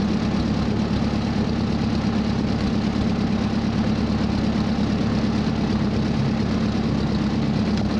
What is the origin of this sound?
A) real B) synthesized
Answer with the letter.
A